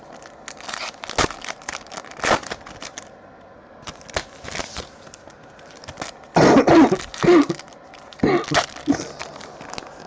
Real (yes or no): yes